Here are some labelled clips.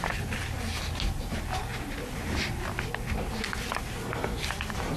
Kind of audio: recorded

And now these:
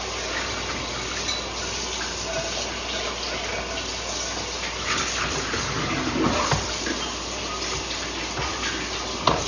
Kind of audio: recorded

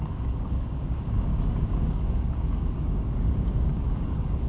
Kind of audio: remade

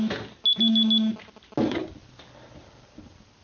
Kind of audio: recorded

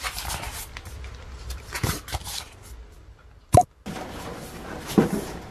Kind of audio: recorded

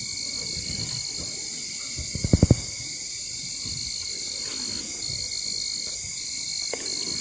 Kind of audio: recorded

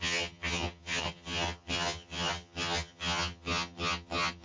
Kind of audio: remade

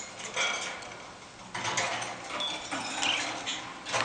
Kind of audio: recorded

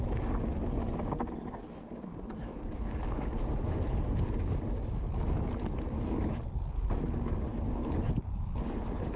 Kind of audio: recorded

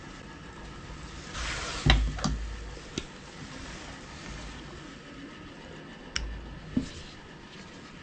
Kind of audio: recorded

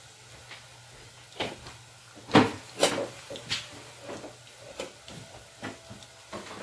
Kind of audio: recorded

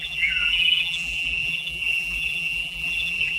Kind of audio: remade